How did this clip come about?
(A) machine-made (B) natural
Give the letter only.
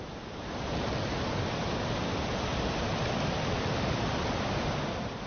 B